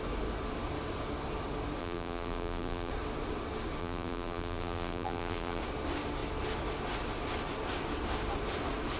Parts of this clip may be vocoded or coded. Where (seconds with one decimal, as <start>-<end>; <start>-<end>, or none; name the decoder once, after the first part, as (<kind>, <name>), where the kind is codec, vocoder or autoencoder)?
1.8-2.9 (vocoder, BigVGAN v2); 3.8-5.6